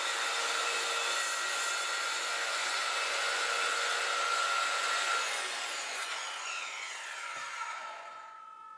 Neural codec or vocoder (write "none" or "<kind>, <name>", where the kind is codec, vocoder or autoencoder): vocoder, Vocos